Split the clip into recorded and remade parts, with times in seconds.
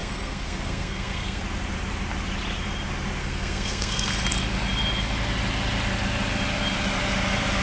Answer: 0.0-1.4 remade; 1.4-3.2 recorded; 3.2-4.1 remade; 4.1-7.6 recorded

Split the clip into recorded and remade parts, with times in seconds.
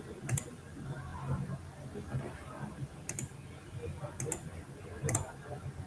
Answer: 0.0-5.9 recorded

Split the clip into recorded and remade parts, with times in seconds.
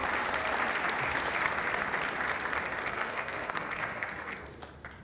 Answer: 0.0-2.9 recorded; 2.9-4.4 remade; 4.4-5.0 recorded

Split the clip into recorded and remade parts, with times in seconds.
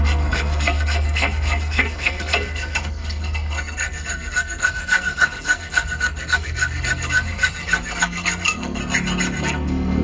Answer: 0.0-8.8 remade; 8.8-9.4 recorded; 9.4-10.0 remade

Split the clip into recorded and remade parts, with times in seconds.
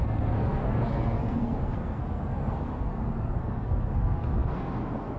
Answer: 0.0-5.2 remade